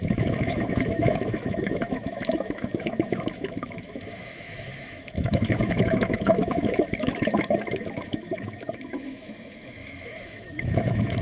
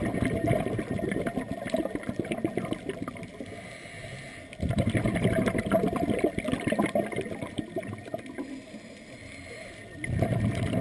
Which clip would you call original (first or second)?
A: second